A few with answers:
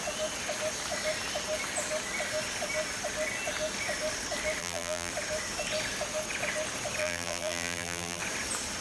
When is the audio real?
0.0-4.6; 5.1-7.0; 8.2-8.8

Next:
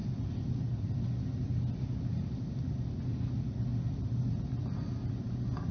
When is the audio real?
0.0-5.7

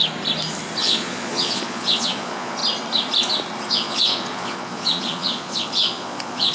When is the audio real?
0.0-0.8; 2.6-3.7

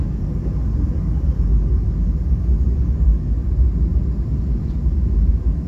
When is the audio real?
0.4-1.4; 3.4-5.3